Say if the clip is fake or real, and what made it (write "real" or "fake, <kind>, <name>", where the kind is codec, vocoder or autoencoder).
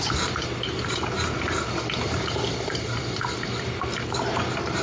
real